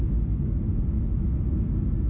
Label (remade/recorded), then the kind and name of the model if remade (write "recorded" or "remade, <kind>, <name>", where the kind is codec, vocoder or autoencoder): recorded